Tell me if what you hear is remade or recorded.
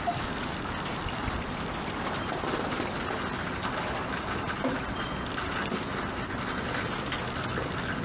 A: recorded